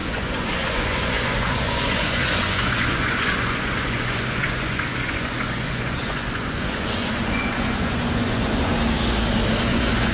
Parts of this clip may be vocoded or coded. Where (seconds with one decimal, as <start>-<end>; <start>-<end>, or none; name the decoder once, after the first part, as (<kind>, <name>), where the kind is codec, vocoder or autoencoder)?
0.0-8.7 (vocoder, Vocos); 9.6-10.1

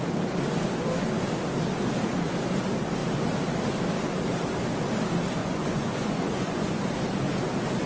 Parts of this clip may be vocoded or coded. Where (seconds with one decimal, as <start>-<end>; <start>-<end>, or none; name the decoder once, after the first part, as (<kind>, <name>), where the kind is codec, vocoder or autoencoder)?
5.4-6.8 (vocoder, Vocos)

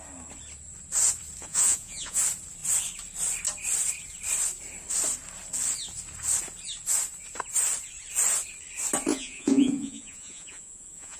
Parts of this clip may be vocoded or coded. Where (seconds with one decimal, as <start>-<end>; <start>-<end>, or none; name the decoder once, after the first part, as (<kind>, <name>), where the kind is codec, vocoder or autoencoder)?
1.4-2.2 (vocoder, Vocos); 9.1-11.2

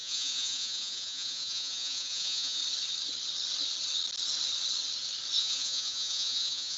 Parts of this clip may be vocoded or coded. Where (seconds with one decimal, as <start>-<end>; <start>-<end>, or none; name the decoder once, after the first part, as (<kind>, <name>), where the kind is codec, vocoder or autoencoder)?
0.0-2.6 (vocoder, Vocos); 5.4-6.8

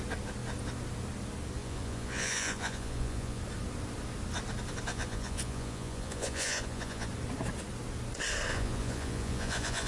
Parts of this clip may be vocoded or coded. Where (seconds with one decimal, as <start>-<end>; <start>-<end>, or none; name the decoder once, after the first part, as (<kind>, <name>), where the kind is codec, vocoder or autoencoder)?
1.6-3.4 (vocoder, Vocos); 4.9-7.1; 8.5-9.9

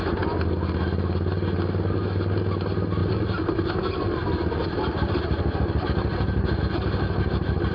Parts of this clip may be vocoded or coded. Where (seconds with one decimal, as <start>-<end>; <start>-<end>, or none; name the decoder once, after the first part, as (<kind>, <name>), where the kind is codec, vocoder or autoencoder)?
none

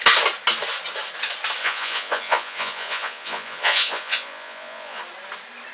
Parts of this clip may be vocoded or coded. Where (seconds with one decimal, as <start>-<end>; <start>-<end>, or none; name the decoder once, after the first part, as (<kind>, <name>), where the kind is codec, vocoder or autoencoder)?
1.6-5.0 (vocoder, Vocos)